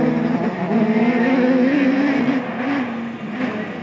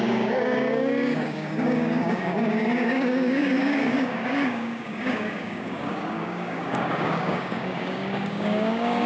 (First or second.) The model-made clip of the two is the second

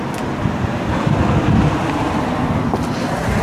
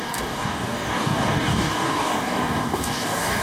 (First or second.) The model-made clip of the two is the second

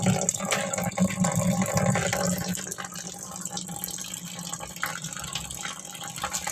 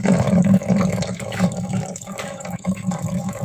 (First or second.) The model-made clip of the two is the second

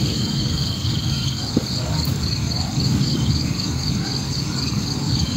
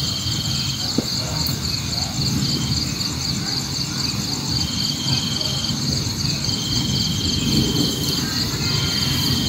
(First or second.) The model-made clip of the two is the first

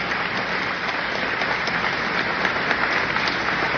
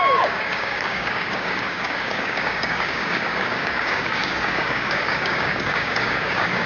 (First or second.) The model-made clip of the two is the second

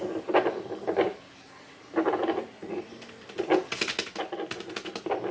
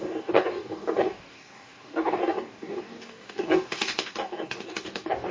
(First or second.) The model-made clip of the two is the second